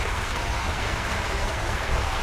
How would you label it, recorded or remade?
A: remade